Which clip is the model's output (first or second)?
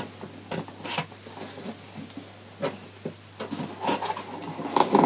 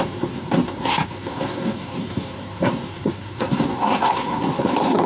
second